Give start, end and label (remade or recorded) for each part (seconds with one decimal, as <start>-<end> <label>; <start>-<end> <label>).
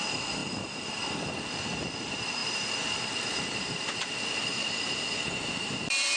0.0-6.2 remade